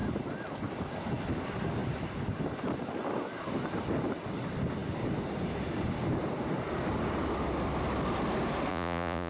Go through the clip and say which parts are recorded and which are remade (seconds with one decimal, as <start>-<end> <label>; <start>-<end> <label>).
0.0-8.7 recorded; 8.7-9.3 remade